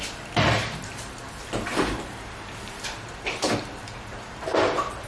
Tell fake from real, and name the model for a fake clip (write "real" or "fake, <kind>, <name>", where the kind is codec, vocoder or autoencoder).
fake, vocoder, BigVGAN v2